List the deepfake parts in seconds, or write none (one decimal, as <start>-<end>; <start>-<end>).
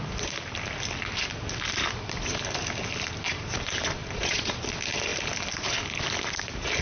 4.0-4.6